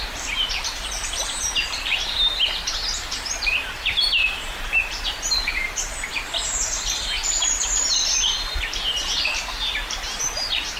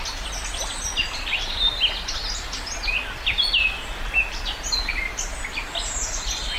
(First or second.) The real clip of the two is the second